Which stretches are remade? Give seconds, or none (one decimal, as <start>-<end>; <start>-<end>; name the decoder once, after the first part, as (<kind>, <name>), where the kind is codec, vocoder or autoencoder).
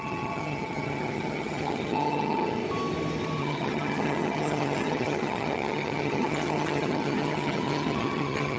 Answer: 0.0-2.6 (vocoder, HiFi-GAN); 3.4-8.6